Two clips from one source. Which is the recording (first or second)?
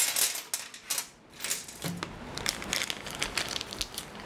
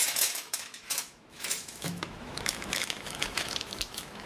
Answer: first